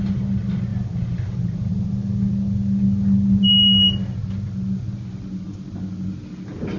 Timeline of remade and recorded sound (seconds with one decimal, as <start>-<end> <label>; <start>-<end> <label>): 0.0-6.8 recorded